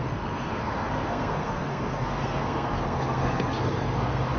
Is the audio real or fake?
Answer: fake